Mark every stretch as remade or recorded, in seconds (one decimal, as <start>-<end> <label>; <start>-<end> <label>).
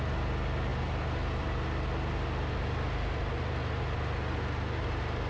0.0-5.3 recorded